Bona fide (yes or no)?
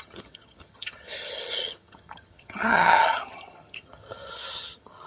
no